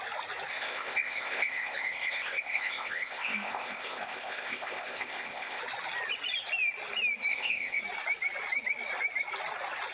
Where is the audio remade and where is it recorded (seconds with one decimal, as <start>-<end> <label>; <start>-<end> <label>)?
0.0-0.5 recorded; 0.5-5.6 remade; 5.6-7.3 recorded; 7.3-7.8 remade; 7.8-9.9 recorded